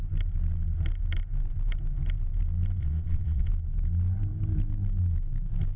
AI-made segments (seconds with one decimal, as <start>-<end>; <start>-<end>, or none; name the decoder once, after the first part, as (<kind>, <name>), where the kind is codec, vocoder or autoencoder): 2.8-3.5 (vocoder, Vocos)